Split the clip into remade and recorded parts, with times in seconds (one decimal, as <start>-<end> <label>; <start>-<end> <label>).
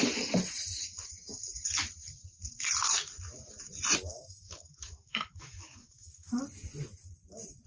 0.0-4.1 recorded; 4.1-6.4 remade; 6.4-7.7 recorded